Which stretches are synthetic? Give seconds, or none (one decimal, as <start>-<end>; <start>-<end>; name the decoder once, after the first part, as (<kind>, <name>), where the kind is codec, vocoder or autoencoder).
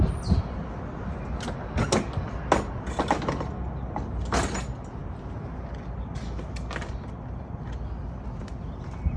none